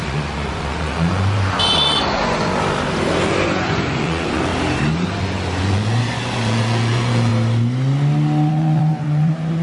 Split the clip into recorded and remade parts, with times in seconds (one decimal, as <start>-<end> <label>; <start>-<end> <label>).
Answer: 0.0-2.5 remade; 2.5-3.3 recorded; 3.3-4.5 remade; 4.5-5.2 recorded; 5.2-7.3 remade; 7.3-8.5 recorded; 8.5-9.6 remade